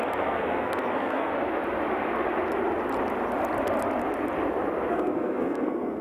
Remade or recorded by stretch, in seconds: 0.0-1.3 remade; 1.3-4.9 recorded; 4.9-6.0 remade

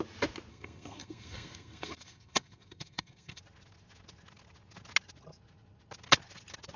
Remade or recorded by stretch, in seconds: 0.0-0.5 recorded; 0.5-3.4 remade; 3.4-6.8 recorded

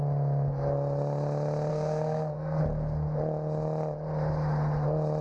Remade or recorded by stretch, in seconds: 0.0-1.7 recorded; 1.7-2.6 remade; 2.6-5.2 recorded

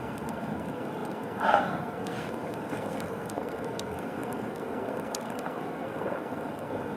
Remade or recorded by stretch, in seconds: 0.0-7.0 remade

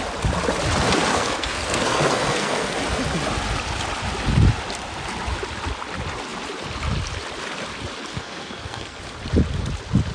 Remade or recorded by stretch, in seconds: 0.0-1.1 recorded; 1.1-2.8 remade; 2.8-8.1 recorded; 8.1-9.0 remade; 9.0-10.1 recorded